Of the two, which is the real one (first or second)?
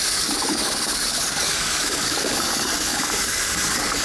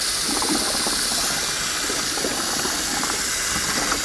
second